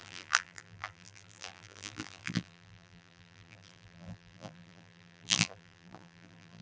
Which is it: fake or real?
fake